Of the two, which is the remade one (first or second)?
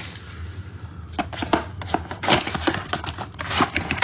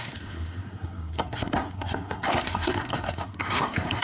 second